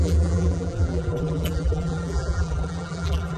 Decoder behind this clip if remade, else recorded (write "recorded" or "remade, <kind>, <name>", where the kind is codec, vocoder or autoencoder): remade, vocoder, BigVGAN v2